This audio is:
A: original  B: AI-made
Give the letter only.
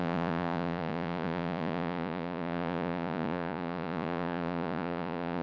B